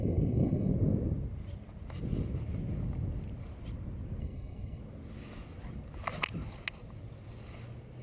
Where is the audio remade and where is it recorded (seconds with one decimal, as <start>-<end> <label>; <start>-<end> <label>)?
0.0-0.7 remade; 0.7-4.2 recorded; 4.2-4.8 remade; 4.8-8.0 recorded